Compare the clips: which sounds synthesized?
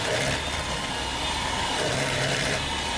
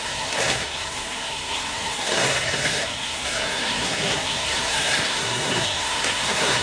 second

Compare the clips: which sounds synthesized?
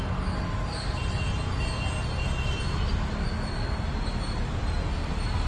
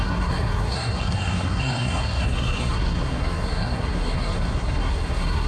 second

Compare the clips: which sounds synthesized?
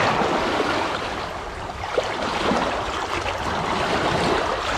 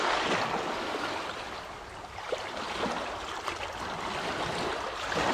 first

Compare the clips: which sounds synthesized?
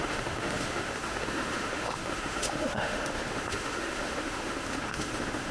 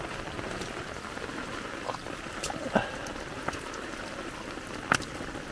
first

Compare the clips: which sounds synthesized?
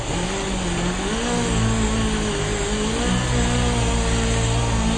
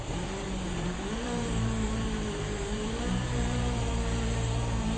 second